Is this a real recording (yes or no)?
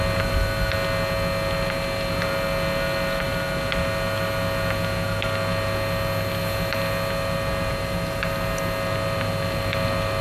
yes